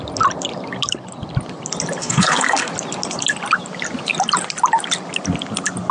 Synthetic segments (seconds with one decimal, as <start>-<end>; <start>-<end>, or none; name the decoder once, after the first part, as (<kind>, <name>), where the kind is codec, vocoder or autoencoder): 2.0-2.7 (codec, SNAC)